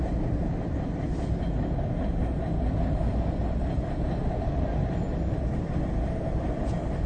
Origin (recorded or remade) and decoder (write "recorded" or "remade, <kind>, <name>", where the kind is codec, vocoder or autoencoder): recorded